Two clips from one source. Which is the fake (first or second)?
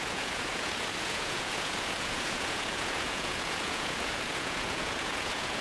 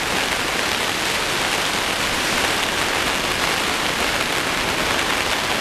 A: first